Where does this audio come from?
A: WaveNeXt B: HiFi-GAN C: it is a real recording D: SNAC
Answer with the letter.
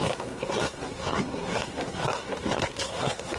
D